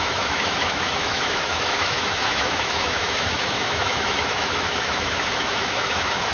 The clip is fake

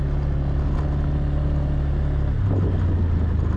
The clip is real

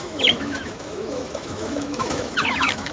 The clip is fake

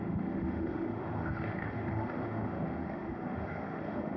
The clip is fake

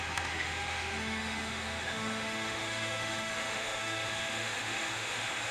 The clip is fake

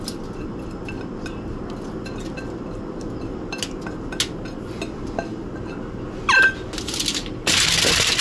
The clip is real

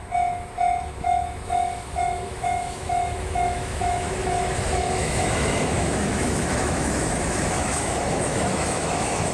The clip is fake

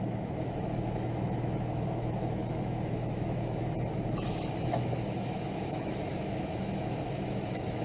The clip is fake